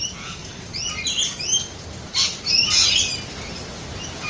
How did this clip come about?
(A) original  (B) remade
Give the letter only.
A